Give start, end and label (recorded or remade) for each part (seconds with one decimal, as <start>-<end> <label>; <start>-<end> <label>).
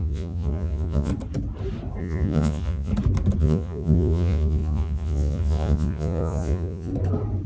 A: 0.0-1.1 remade; 1.1-2.0 recorded; 2.0-2.9 remade; 2.9-3.4 recorded; 3.4-6.9 remade; 6.9-7.5 recorded